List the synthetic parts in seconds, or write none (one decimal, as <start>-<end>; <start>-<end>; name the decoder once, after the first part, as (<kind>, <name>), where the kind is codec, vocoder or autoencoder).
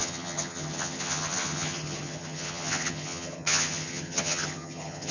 0.0-5.1 (vocoder, HiFi-GAN)